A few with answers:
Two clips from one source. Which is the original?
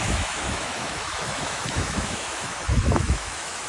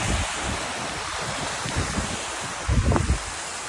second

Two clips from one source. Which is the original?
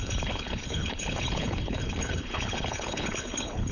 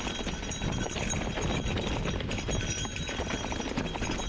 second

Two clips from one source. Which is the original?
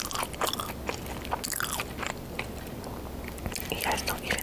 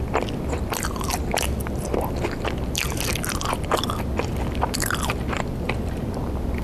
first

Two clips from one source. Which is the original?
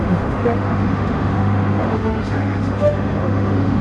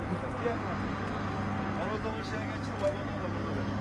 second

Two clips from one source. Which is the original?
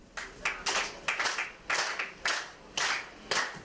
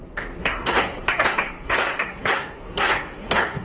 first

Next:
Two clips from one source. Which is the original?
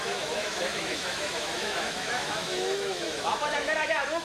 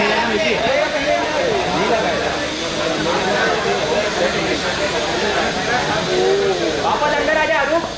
second